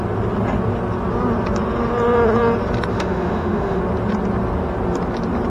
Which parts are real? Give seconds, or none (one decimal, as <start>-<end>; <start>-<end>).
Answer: 0.0-2.9; 3.8-5.5

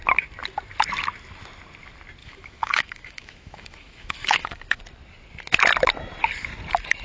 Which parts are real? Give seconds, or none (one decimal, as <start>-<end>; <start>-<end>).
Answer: 0.0-2.2; 4.8-7.0

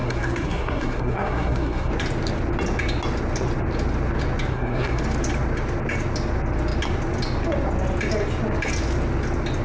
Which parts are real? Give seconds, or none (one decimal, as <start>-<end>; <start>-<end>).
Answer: 1.9-4.5; 5.0-9.6

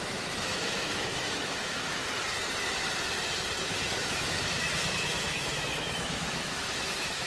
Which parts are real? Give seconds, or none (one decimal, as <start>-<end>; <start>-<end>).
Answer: 2.0-4.0

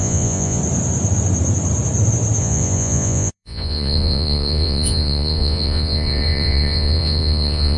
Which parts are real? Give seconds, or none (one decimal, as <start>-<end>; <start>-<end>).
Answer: 0.6-2.4

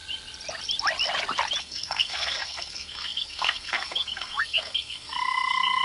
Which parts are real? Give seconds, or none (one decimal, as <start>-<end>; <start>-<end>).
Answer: 0.0-1.6

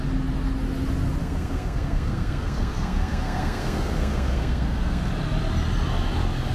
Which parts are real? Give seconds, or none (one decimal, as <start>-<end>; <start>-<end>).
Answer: 0.0-1.2; 5.1-6.5